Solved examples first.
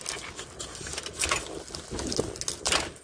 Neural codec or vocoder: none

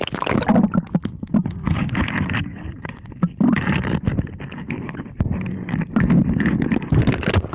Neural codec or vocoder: none